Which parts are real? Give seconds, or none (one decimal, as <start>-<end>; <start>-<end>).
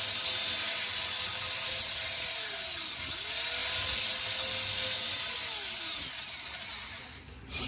0.0-7.7